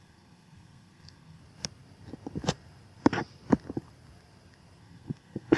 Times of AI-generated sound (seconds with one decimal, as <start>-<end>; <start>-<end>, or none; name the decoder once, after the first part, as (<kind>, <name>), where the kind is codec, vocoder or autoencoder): 0.0-1.4 (codec, SNAC); 4.8-5.6